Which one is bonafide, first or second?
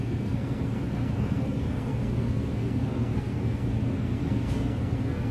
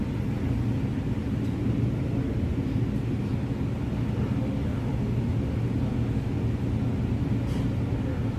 second